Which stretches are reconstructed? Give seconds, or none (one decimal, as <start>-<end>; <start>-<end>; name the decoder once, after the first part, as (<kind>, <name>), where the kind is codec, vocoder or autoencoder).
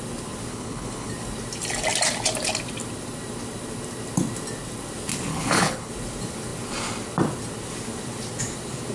0.5-1.1 (codec, HILCodec); 5.3-5.9